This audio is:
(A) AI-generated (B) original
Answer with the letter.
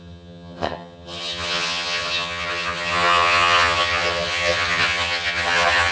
A